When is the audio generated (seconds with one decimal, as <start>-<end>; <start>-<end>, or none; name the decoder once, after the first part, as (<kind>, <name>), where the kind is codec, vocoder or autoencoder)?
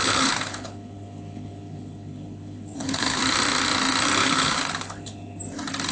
0.0-3.2 (codec, HILCodec); 4.2-5.4